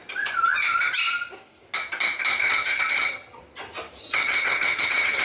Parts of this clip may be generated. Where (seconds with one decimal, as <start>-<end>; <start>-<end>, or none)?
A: 2.4-3.4; 4.0-5.2